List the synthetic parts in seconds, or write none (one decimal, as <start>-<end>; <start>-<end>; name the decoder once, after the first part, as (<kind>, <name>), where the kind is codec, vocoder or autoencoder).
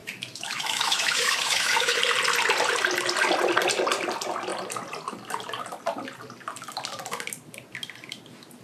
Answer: 0.0-2.0 (autoencoder, DAC-VAE)